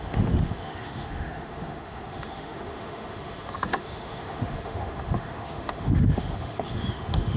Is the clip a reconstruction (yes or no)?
yes